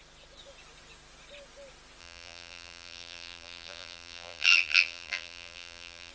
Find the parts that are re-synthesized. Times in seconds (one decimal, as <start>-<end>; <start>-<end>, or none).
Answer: 2.0-6.1